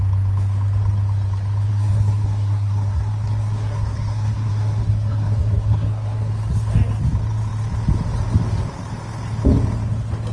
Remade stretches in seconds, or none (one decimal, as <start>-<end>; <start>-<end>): 1.7-6.3